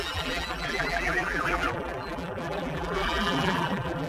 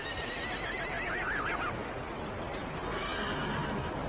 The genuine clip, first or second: second